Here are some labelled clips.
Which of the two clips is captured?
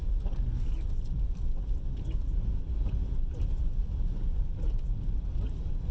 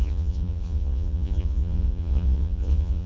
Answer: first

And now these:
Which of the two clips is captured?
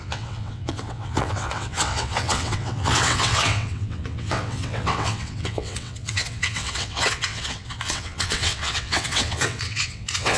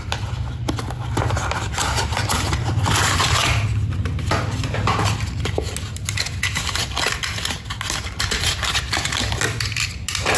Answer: second